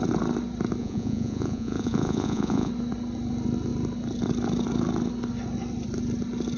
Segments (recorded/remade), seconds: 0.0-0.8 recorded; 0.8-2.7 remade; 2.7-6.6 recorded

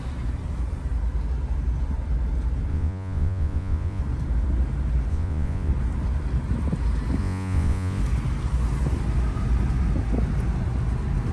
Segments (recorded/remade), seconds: 0.0-2.7 recorded; 2.7-4.0 remade; 4.0-5.1 recorded; 5.1-5.7 remade; 5.7-7.2 recorded; 7.2-8.0 remade; 8.0-11.3 recorded

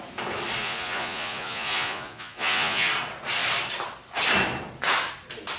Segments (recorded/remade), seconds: 0.0-0.6 recorded; 0.6-2.9 remade; 2.9-5.6 recorded